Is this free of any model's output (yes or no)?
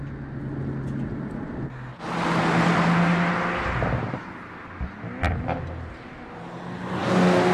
yes